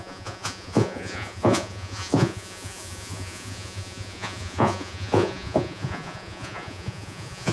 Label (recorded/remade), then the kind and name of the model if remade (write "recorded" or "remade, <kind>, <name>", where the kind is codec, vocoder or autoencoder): remade, vocoder, Vocos